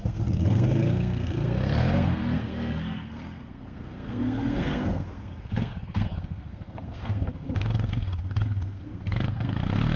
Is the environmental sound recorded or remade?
remade